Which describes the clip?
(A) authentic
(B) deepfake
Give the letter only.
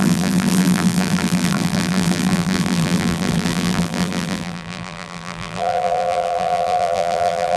B